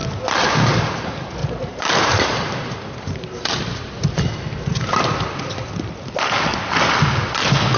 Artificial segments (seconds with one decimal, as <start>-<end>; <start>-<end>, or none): 1.4-4.2